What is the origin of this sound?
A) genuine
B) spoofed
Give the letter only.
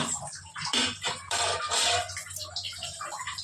B